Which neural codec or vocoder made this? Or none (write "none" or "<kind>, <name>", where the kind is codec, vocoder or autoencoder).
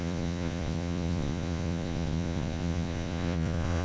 vocoder, Vocos